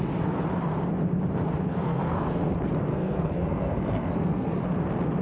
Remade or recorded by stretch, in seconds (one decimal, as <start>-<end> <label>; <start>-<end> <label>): 0.0-1.6 recorded; 1.6-2.5 remade; 2.5-2.9 recorded; 2.9-4.6 remade; 4.6-5.2 recorded